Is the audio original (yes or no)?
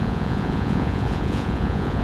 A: no